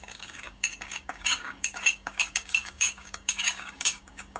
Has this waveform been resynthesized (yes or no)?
yes